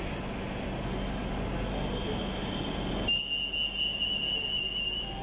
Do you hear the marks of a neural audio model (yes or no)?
no